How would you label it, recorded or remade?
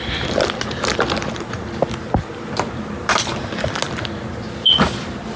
recorded